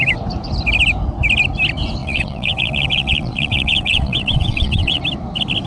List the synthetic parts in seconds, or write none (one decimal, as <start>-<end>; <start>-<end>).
2.0-5.0